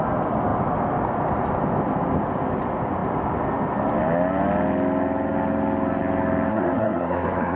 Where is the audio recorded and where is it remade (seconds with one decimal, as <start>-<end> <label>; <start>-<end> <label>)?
0.0-6.5 recorded; 6.5-7.6 remade